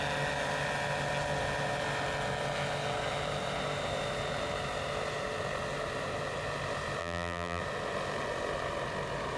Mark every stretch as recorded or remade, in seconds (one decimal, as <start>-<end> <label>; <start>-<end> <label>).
0.0-7.0 recorded; 7.0-7.6 remade; 7.6-9.4 recorded